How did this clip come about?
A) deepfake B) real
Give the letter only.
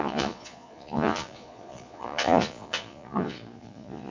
A